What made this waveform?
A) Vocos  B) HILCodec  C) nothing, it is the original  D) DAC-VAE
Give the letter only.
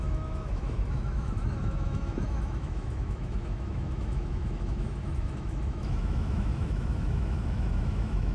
D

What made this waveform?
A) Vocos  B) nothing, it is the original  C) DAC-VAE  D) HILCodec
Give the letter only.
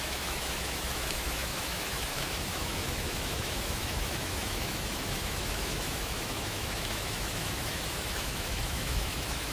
C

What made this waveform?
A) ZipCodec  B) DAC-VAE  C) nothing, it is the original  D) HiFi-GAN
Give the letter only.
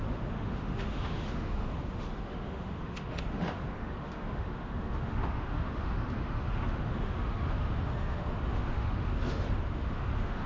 B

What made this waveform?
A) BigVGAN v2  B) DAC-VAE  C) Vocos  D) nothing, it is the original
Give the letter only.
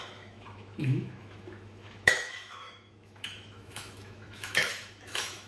B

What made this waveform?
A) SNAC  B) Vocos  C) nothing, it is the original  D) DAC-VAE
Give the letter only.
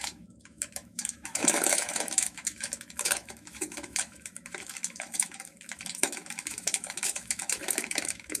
D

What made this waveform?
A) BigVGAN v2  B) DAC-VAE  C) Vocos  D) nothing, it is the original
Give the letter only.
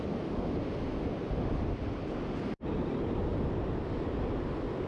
D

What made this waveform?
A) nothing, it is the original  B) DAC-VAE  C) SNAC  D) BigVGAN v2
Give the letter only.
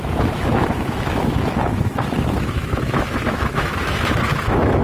B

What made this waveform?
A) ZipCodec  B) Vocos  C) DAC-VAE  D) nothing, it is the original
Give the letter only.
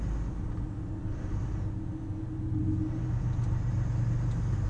D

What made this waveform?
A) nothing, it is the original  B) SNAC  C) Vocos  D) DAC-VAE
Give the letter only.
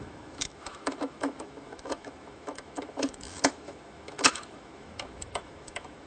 D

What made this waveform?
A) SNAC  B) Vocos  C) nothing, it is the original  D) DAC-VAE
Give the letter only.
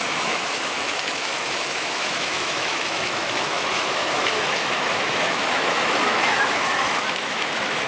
D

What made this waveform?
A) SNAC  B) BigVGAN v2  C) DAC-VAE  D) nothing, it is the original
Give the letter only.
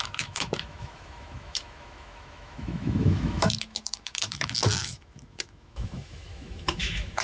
C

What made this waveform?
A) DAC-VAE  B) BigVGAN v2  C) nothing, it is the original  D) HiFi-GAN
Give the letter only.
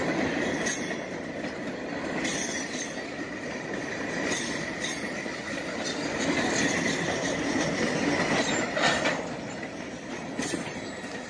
C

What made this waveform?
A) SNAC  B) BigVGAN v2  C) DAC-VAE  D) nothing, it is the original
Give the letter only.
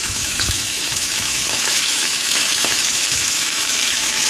C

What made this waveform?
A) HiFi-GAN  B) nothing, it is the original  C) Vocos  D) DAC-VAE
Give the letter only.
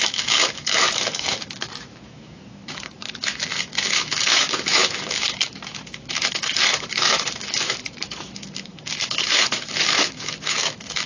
D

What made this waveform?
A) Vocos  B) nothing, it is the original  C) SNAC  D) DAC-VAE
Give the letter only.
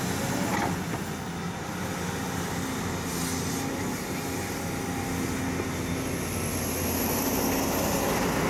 B